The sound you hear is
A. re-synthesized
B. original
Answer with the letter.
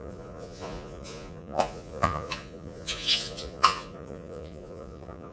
A